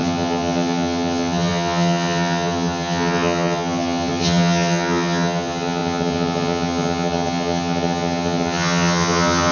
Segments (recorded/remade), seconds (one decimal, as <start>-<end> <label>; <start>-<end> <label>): 0.0-9.5 remade